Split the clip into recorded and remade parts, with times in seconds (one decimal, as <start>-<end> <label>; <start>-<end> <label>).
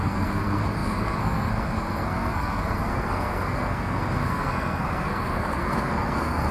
0.0-6.5 remade